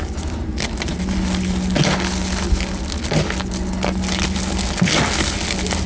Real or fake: real